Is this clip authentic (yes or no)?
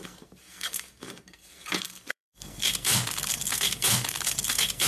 no